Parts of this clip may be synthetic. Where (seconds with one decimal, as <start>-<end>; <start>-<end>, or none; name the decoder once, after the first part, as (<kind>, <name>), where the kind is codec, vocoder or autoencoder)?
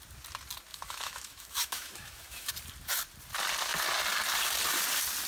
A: 0.7-2.5 (autoencoder, DAC-VAE)